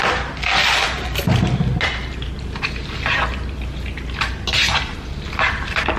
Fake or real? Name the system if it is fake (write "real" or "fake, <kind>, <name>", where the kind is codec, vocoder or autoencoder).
real